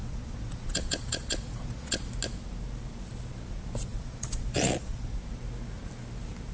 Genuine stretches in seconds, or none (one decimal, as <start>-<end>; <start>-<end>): 2.1-3.9; 5.2-6.5